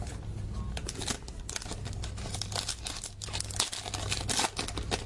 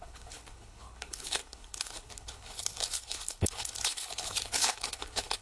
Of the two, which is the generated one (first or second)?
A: second